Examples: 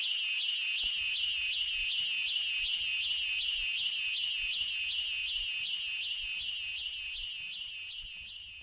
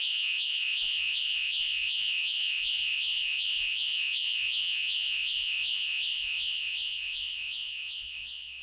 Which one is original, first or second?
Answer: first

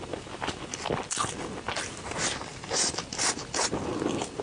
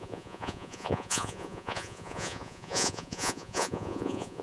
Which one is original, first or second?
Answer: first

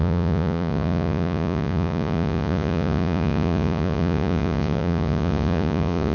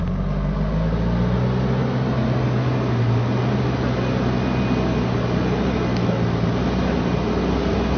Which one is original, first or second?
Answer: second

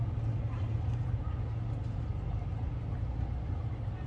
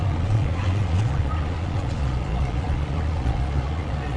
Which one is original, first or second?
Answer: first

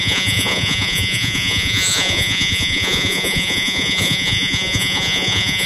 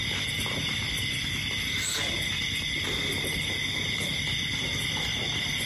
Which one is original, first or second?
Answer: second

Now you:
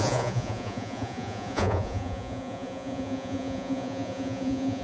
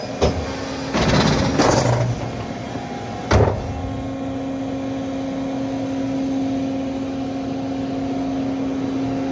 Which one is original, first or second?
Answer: second